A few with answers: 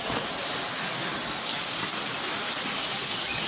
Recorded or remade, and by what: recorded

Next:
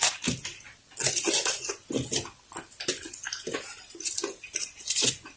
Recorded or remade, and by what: recorded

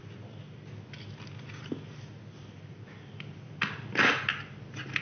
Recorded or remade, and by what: recorded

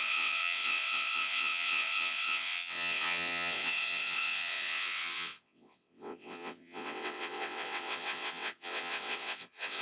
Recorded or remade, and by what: remade, vocoder, WaveNeXt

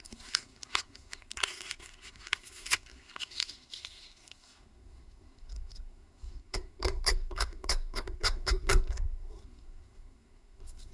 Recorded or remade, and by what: remade, codec, SNAC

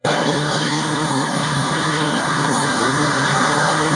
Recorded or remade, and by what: remade, codec, SNAC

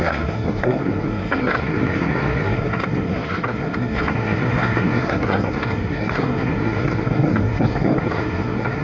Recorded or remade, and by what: remade, codec, SNAC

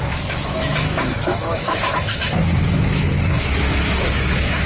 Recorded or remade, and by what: remade, autoencoder, DAC-VAE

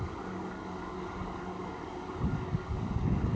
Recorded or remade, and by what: remade, codec, DAC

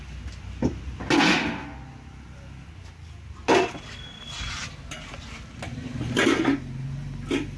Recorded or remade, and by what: recorded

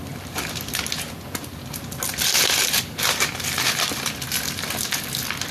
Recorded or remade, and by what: recorded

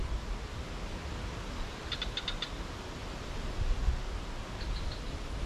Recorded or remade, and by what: recorded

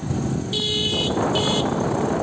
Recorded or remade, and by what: recorded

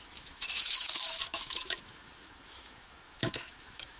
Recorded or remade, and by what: remade, autoencoder, DAC-VAE